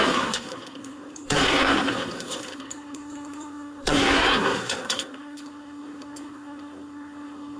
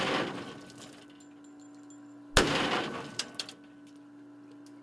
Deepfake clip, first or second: first